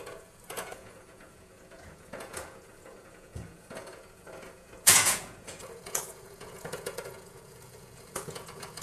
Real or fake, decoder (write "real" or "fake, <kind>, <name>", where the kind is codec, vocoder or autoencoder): fake, vocoder, Vocos